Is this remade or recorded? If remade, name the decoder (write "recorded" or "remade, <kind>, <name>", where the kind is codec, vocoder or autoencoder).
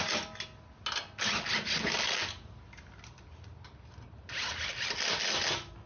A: recorded